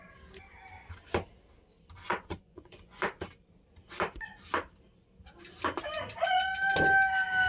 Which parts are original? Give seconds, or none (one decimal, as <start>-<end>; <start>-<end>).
0.0-2.0; 3.0-7.5